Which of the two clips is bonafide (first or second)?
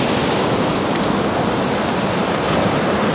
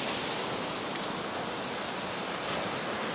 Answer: second